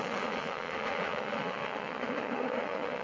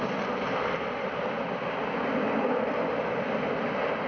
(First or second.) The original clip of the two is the second